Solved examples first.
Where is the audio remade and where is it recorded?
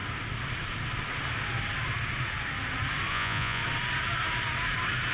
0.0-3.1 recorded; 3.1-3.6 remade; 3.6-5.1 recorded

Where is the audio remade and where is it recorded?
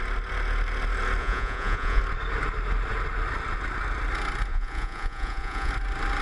0.0-1.2 recorded; 1.2-2.0 remade; 2.0-4.5 recorded; 4.5-5.7 remade; 5.7-6.2 recorded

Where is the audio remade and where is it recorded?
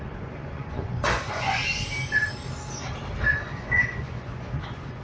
0.0-1.6 remade; 1.6-3.3 recorded; 3.3-5.0 remade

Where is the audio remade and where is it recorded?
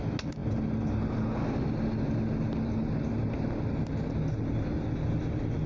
0.0-5.7 recorded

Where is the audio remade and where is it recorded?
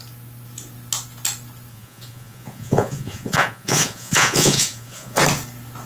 0.0-1.7 recorded; 1.7-5.2 remade; 5.2-5.9 recorded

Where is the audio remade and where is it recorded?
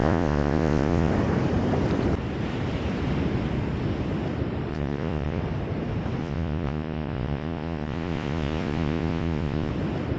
0.0-1.1 remade; 1.1-4.7 recorded; 4.7-5.4 remade; 5.4-6.2 recorded; 6.2-9.7 remade; 9.7-10.2 recorded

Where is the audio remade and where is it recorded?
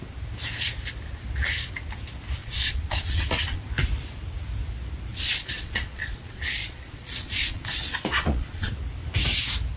0.0-2.4 recorded; 2.4-3.6 remade; 3.6-5.1 recorded; 5.1-8.7 remade; 8.7-9.8 recorded